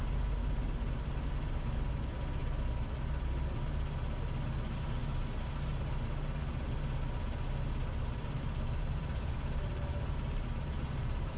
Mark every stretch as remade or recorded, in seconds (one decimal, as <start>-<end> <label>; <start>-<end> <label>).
0.0-8.1 recorded; 8.1-11.4 remade